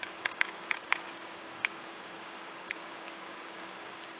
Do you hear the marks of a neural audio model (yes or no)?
yes